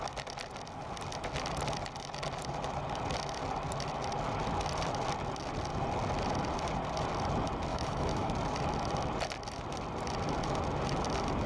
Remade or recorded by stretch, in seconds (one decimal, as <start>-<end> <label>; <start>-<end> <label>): 0.0-7.7 recorded; 7.7-8.3 remade; 8.3-11.5 recorded